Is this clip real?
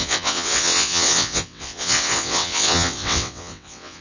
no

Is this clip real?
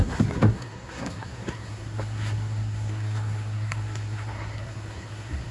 no